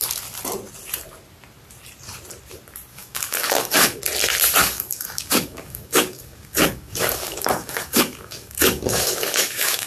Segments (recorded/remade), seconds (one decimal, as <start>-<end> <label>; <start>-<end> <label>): 0.0-2.9 recorded; 2.9-4.0 remade; 4.0-4.6 recorded; 4.6-9.9 remade